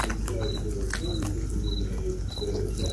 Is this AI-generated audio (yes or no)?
no